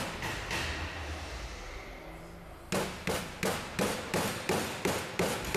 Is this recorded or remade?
recorded